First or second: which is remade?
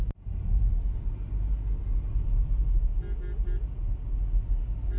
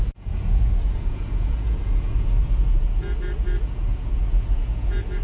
second